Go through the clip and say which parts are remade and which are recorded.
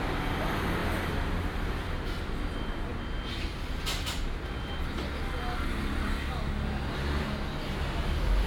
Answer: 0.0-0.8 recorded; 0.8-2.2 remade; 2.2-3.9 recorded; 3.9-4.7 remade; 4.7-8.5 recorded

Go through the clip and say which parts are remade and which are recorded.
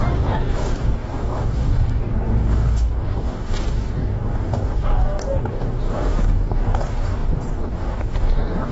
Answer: 0.0-8.7 remade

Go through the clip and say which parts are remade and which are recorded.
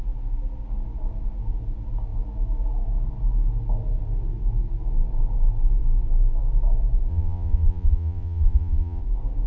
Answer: 0.0-7.1 recorded; 7.1-9.0 remade; 9.0-9.5 recorded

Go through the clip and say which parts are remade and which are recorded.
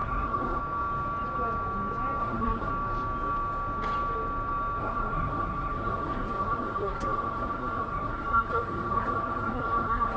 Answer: 0.0-0.6 remade; 0.6-2.2 recorded; 2.2-2.7 remade; 2.7-4.8 recorded; 4.8-10.2 remade